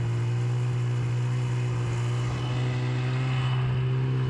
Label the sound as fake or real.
real